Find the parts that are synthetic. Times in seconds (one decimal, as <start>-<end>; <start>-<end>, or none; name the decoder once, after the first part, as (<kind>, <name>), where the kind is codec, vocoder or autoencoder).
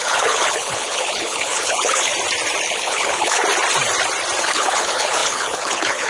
0.0-2.1 (codec, HILCodec); 2.6-3.4; 4.4-6.1